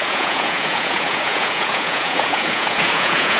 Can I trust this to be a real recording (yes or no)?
no